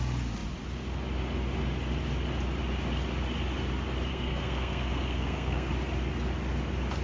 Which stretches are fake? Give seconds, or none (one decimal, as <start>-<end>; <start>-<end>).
4.1-5.7